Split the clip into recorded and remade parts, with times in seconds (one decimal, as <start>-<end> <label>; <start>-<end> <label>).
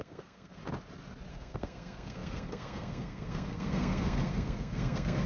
0.0-0.6 remade; 0.6-1.3 recorded; 1.3-5.3 remade